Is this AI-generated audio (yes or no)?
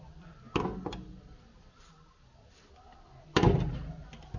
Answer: no